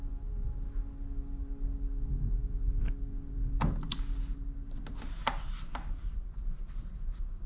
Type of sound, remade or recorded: recorded